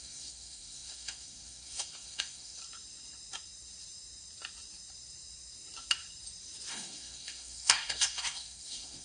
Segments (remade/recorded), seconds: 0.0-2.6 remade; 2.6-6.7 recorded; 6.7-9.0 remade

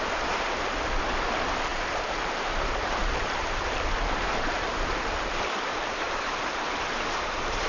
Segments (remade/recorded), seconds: 0.0-1.7 recorded; 1.7-2.6 remade; 2.6-3.0 recorded; 3.0-7.7 remade

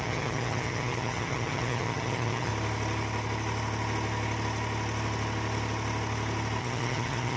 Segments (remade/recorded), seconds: 0.0-2.5 remade; 2.5-6.6 recorded; 6.6-7.4 remade

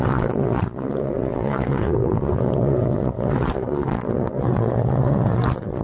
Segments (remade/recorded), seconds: 0.0-5.8 remade

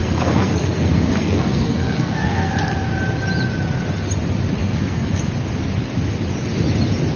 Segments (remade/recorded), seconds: 0.0-2.5 remade; 2.5-4.6 recorded; 4.6-5.2 remade; 5.2-7.2 recorded

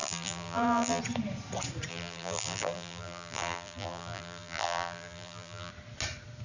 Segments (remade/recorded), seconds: 0.0-1.0 remade; 1.0-1.9 recorded; 1.9-5.7 remade; 5.7-6.4 recorded

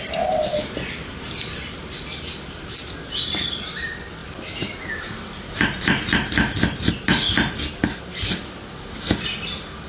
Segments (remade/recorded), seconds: 0.0-9.9 recorded